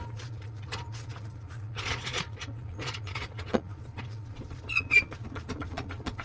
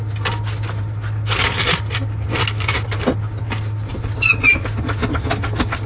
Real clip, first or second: second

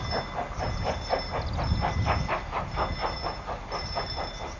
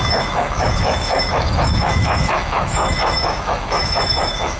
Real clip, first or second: first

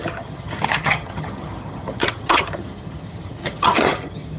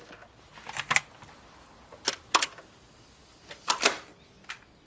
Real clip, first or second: second